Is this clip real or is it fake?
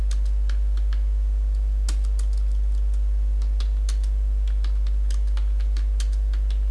real